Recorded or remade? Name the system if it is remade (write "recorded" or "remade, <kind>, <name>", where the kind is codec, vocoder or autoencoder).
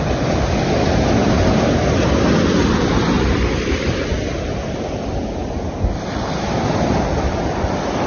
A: recorded